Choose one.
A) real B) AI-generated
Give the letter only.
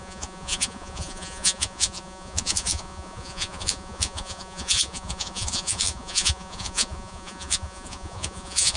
B